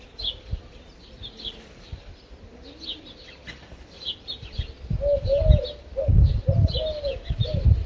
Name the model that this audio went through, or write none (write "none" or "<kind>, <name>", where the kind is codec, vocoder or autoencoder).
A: none